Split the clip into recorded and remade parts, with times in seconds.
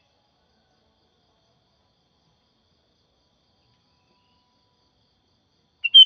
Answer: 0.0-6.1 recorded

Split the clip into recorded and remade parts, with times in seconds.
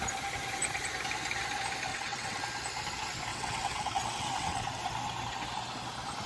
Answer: 0.0-1.9 recorded; 1.9-2.4 remade; 2.4-3.3 recorded; 3.3-4.8 remade; 4.8-6.3 recorded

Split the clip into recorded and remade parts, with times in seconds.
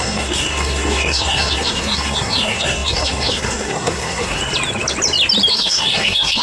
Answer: 0.0-4.4 remade; 4.4-5.5 recorded; 5.5-6.4 remade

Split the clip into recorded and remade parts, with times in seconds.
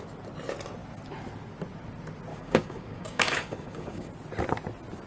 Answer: 0.0-2.3 recorded; 2.3-4.1 remade; 4.1-5.1 recorded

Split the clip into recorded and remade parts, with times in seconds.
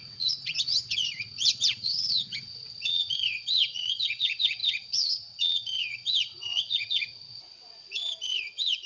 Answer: 0.0-8.9 remade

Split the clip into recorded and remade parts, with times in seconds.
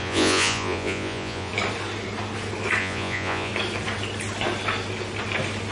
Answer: 0.0-1.5 remade; 1.5-2.8 recorded; 2.8-3.5 remade; 3.5-5.7 recorded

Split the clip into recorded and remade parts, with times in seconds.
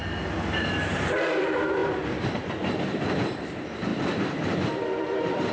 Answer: 0.0-1.3 recorded; 1.3-5.5 remade